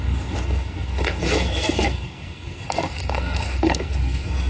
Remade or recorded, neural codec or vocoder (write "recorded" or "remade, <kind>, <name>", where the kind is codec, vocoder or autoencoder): remade, codec, SNAC